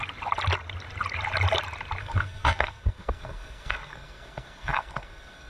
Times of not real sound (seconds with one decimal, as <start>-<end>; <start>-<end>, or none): 2.0-5.5